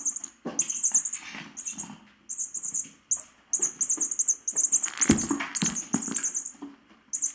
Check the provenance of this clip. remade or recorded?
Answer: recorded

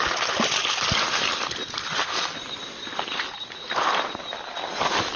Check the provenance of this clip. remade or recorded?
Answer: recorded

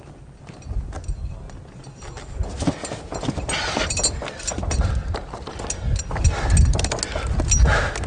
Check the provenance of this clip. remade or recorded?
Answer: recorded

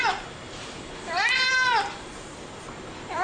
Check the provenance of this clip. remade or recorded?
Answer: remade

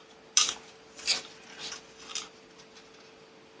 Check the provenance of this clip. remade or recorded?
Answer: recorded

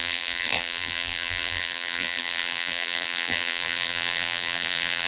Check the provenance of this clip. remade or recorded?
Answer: remade